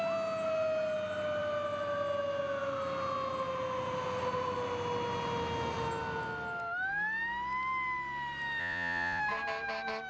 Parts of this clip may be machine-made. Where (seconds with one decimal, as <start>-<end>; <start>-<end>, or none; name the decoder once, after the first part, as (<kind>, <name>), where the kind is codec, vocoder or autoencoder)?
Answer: 8.6-9.2 (vocoder, Vocos)